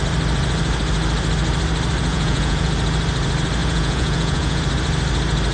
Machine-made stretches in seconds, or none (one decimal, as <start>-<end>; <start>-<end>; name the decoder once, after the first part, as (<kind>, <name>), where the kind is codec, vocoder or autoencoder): 2.1-2.7 (vocoder, Vocos); 3.6-4.6